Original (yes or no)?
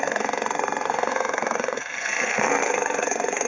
no